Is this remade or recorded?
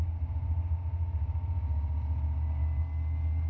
recorded